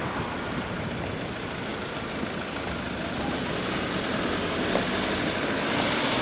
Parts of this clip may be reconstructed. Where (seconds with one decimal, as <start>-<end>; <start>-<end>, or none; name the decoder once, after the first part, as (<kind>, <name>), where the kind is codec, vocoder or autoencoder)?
none

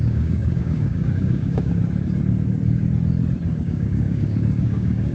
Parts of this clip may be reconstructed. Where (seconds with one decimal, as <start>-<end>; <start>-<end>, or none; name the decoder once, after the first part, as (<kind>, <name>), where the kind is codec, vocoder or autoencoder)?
0.0-1.8 (codec, DAC); 3.6-5.1

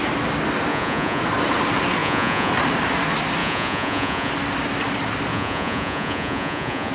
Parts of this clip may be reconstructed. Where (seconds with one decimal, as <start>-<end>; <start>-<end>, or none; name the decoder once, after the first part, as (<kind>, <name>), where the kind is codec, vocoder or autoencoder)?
0.7-1.2 (vocoder, Vocos); 2.0-2.5; 3.4-4.3; 5.3-6.9